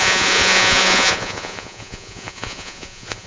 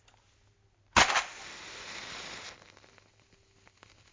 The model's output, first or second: first